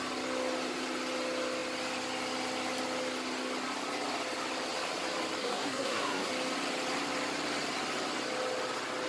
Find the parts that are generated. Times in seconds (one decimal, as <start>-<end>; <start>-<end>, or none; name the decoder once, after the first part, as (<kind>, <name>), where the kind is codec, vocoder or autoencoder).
5.4-6.3 (codec, SNAC)